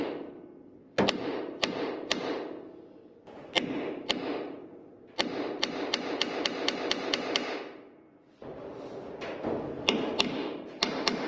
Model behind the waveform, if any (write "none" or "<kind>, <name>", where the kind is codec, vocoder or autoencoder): none